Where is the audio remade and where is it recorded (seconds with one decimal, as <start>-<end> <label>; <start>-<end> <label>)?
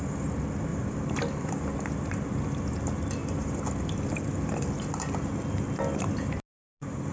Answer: 0.0-0.7 recorded; 0.7-1.5 remade; 1.5-7.1 recorded